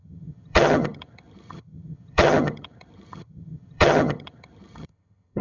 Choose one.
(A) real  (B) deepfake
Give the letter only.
B